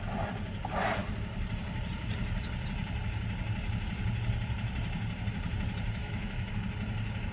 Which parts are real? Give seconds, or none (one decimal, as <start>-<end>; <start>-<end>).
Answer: 0.0-6.0; 6.5-7.3